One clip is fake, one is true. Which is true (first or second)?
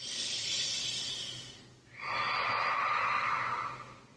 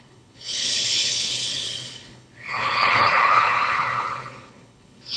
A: first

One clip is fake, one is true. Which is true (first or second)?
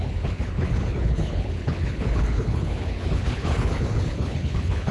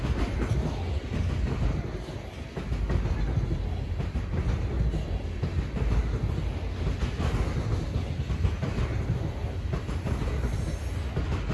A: second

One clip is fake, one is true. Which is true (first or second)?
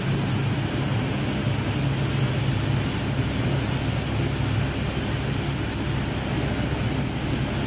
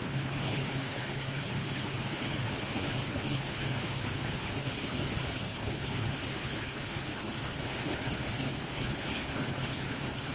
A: first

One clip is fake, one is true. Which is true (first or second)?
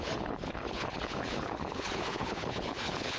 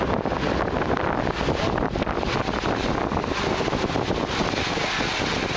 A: second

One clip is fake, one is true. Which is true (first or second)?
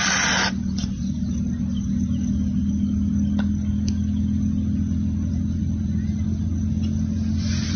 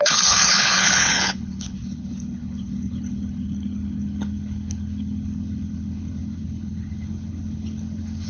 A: first